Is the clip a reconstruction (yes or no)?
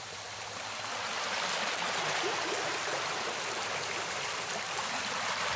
yes